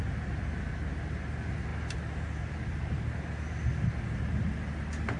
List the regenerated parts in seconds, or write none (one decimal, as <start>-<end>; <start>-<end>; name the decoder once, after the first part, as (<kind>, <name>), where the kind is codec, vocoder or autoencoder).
none